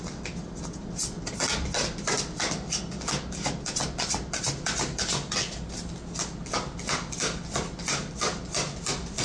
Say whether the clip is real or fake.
real